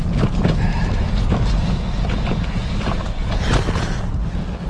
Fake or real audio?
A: real